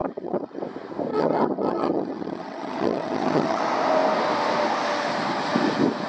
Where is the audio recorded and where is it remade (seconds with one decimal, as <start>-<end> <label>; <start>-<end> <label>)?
0.0-0.6 remade; 0.6-1.1 recorded; 1.1-3.6 remade; 3.6-6.1 recorded